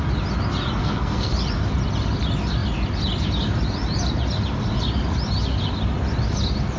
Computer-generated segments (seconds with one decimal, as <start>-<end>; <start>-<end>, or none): 0.8-1.3